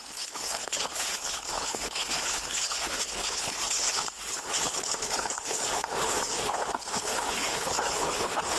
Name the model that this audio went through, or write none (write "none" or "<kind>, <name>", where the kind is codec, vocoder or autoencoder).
codec, HILCodec